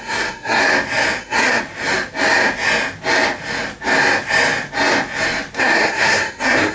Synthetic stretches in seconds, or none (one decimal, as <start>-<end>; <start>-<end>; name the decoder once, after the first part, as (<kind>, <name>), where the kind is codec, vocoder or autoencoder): 0.0-0.6 (codec, SNAC); 1.2-1.6; 5.6-6.7

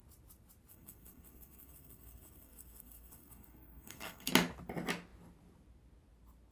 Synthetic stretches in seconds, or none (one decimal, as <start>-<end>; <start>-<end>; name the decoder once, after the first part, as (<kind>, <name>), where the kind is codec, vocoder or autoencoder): 0.7-4.3 (codec, SNAC)

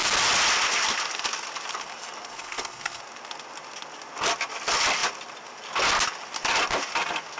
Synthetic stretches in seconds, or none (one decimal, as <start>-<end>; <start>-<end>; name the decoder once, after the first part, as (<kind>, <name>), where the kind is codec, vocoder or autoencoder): 2.3-3.0 (codec, SNAC)

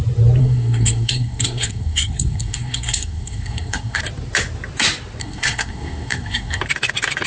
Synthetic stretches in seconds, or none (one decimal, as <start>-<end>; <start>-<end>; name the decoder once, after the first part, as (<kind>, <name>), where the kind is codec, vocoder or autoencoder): 0.4-4.0 (codec, SNAC); 5.2-6.6

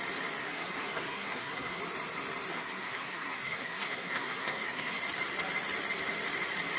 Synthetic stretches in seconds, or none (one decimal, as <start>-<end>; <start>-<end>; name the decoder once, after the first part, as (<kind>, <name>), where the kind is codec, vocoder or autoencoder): 0.4-1.8 (codec, SNAC); 2.5-5.0

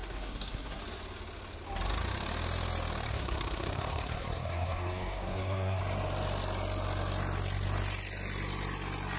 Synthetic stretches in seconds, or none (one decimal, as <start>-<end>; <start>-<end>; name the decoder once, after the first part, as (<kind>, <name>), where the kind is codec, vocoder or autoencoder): 0.0-0.8 (codec, SNAC); 3.1-5.8

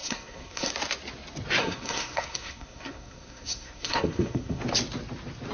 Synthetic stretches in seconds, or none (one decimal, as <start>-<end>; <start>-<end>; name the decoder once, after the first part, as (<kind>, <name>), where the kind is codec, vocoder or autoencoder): 0.0-0.7 (codec, SNAC); 1.6-4.6